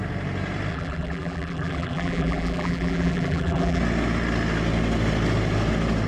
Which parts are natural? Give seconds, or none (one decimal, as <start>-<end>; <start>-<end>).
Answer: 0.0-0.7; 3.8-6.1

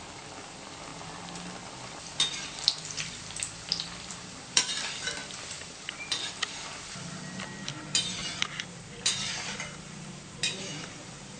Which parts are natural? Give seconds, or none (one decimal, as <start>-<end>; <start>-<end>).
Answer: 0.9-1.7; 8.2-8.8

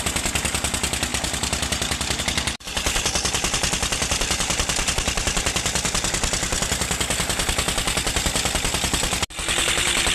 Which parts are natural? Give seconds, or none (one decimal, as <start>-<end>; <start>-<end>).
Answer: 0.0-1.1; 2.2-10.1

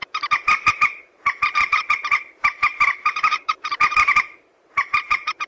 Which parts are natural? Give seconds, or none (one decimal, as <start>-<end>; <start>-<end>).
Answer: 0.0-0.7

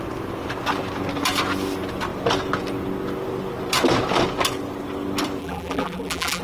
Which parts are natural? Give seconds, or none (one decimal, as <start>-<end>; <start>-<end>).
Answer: 0.0-5.4

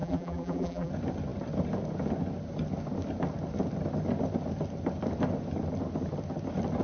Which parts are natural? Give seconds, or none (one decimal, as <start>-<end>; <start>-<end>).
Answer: 0.9-6.8